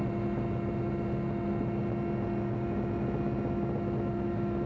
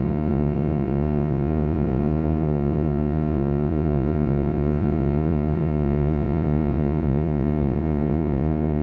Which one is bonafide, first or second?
first